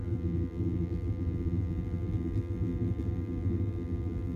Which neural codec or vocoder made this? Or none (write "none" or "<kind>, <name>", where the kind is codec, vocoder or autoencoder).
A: vocoder, BigVGAN v2